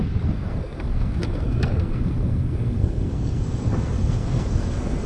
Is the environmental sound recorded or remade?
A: remade